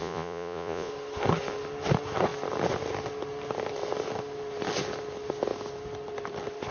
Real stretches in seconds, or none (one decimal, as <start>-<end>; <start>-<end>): 0.9-6.7